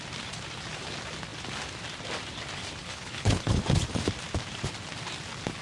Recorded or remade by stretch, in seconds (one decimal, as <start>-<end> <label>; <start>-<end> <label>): 0.0-2.8 recorded; 2.8-3.6 remade; 3.6-5.6 recorded